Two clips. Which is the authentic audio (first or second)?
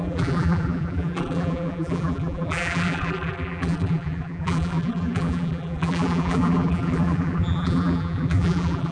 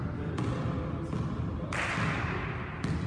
second